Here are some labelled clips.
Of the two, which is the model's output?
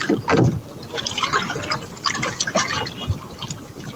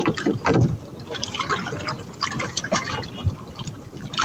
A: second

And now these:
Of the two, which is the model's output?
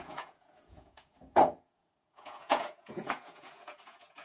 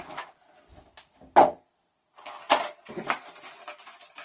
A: first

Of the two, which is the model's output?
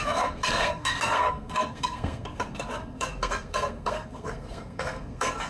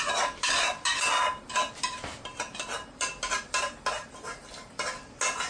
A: first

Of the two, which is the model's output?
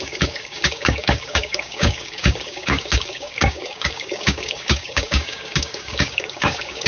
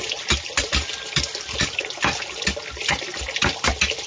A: first